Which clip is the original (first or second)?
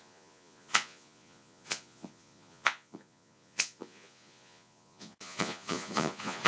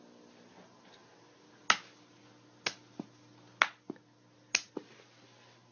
second